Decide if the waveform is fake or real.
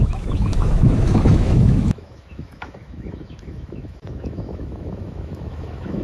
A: fake